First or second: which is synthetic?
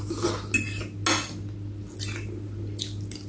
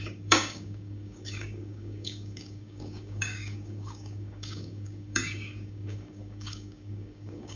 second